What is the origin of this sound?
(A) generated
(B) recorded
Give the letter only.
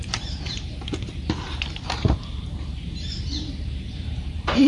A